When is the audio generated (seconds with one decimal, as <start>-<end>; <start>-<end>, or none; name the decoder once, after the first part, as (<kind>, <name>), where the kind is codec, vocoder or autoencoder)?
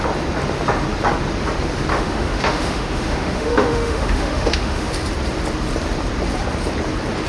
1.9-4.9 (autoencoder, DAC-VAE)